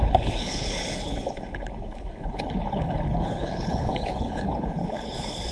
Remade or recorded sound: remade